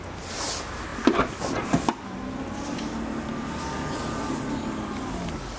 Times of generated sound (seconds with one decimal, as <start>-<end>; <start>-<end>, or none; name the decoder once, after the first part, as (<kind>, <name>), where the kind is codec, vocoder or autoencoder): none